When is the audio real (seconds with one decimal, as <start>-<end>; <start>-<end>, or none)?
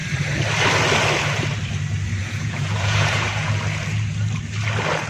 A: 0.0-2.2; 3.5-5.1